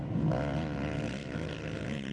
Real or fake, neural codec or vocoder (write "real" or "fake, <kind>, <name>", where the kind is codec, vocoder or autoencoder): real